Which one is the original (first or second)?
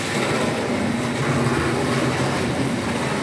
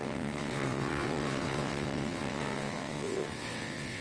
first